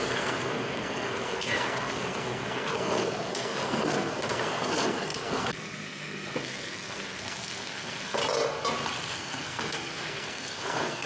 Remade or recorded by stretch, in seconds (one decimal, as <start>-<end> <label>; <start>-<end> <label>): 0.0-8.2 remade; 8.2-9.1 recorded; 9.1-11.1 remade